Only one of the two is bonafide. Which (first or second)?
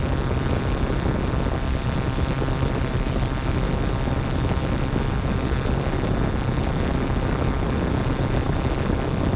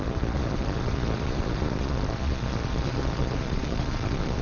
first